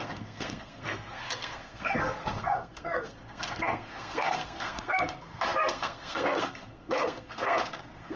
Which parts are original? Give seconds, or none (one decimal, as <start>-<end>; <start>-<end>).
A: none